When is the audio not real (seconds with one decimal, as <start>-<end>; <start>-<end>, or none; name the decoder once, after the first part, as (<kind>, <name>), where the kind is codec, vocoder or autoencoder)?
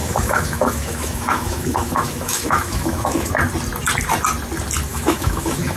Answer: 0.0-3.3 (autoencoder, DAC-VAE); 4.9-5.8